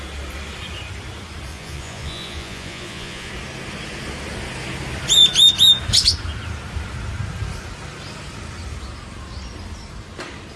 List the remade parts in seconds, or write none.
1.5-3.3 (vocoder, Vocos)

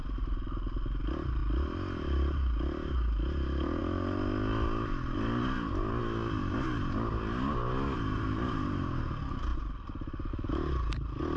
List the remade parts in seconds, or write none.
none

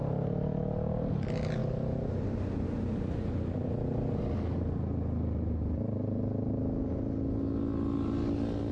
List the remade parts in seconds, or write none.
none

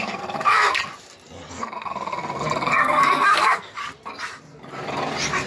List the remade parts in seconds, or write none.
0.0-0.8 (codec, SNAC); 1.5-3.8

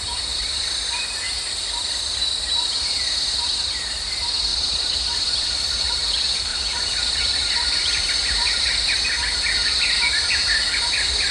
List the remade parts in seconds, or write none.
4.5-5.9 (vocoder, BigVGAN v2); 6.5-9.0